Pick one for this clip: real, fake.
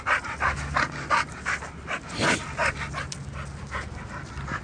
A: real